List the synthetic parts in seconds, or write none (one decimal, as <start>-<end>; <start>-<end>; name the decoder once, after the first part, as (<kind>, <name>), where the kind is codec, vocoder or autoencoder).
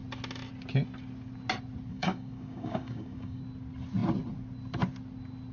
1.9-3.4 (codec, DAC)